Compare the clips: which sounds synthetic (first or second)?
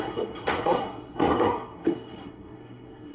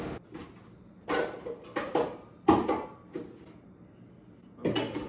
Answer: first